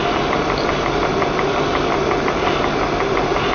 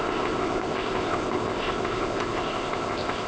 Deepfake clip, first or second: second